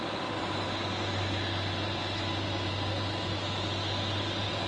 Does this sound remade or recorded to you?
recorded